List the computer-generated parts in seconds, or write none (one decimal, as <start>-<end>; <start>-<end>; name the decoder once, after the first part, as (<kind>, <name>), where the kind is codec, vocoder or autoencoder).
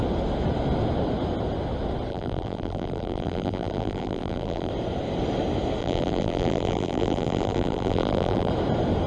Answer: 2.1-4.7 (vocoder, BigVGAN v2); 5.8-8.5